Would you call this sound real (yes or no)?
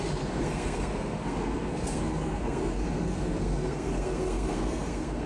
no